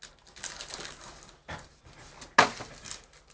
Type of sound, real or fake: real